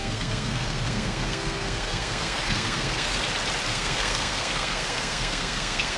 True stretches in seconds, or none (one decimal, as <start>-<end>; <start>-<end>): 3.2-3.7